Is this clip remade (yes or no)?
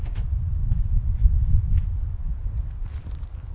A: no